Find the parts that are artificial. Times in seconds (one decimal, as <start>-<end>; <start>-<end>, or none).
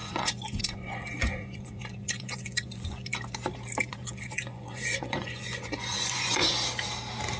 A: 0.0-3.1; 3.9-6.5